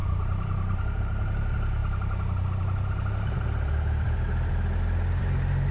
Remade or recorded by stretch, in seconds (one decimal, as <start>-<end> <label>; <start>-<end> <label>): 0.0-1.0 remade; 1.0-5.7 recorded